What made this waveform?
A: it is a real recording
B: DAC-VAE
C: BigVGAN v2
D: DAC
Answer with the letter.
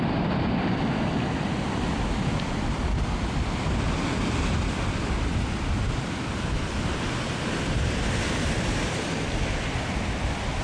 A